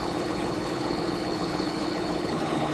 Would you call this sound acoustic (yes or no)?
no